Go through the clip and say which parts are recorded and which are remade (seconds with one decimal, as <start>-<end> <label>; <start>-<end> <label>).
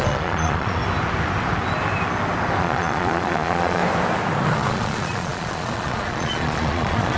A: 0.0-0.8 remade; 0.8-2.6 recorded; 2.6-3.8 remade; 3.8-4.5 recorded; 4.5-7.2 remade